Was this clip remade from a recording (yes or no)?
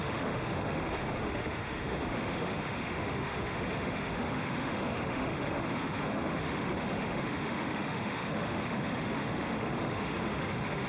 yes